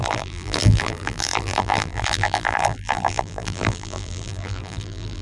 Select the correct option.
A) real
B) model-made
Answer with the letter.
B